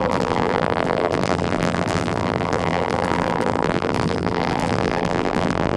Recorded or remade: remade